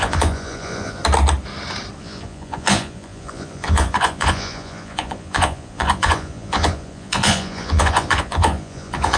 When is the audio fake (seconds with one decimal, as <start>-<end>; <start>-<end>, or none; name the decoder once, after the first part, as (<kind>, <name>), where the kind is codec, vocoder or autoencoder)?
0.0-1.0 (vocoder, Vocos); 2.0-9.2